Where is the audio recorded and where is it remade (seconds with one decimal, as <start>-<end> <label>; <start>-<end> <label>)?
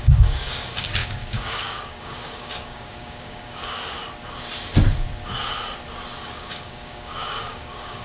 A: 0.0-4.0 remade; 4.0-6.2 recorded; 6.2-8.0 remade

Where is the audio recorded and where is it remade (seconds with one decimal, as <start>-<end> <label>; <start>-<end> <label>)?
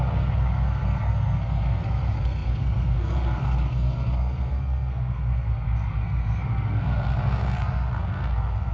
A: 0.0-8.7 remade